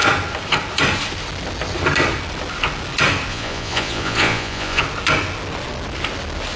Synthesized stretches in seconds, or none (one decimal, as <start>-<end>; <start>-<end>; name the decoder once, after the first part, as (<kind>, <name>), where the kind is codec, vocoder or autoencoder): 3.3-4.8 (vocoder, Vocos)